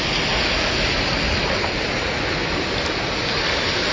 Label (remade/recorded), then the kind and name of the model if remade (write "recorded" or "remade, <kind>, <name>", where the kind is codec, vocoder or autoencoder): recorded